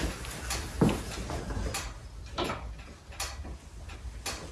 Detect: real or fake real